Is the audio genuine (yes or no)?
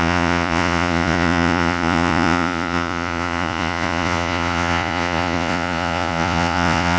no